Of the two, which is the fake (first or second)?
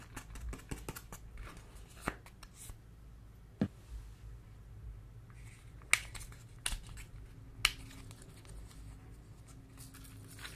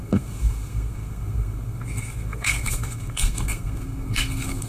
second